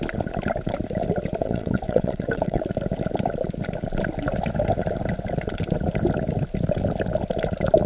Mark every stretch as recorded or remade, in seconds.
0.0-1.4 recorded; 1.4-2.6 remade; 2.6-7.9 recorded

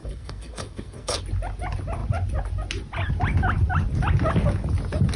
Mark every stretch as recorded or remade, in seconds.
0.0-1.2 remade; 1.2-5.2 recorded

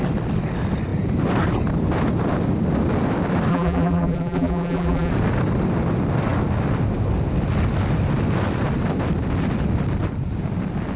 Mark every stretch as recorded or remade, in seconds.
0.0-3.5 recorded; 3.5-5.1 remade; 5.1-11.0 recorded

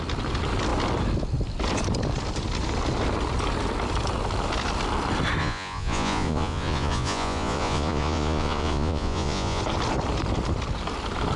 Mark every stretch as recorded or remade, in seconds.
0.0-5.4 recorded; 5.4-9.6 remade; 9.6-11.4 recorded

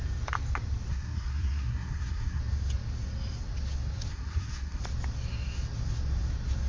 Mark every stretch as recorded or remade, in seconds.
0.0-0.9 recorded; 0.9-2.4 remade; 2.4-4.1 recorded; 4.1-4.8 remade; 4.8-6.7 recorded

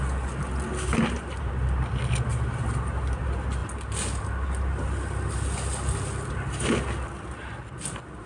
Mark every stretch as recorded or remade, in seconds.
0.0-2.3 recorded; 2.3-3.2 remade; 3.2-8.3 recorded

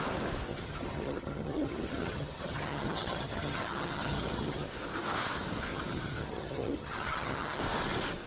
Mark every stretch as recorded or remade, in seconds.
0.0-0.5 recorded; 0.5-4.7 remade; 4.7-5.7 recorded; 5.7-7.6 remade; 7.6-8.3 recorded